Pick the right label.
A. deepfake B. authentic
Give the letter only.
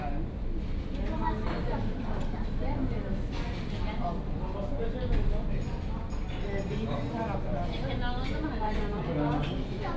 B